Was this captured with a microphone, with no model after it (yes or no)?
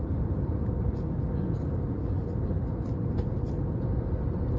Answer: yes